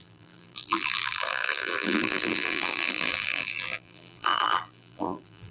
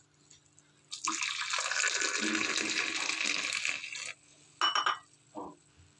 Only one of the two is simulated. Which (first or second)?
first